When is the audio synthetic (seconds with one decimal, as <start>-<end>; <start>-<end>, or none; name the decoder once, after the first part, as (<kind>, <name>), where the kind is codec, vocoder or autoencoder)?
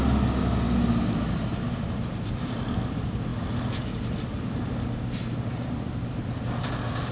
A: none